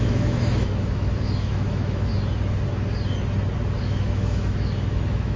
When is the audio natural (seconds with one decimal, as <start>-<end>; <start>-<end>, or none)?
2.1-3.8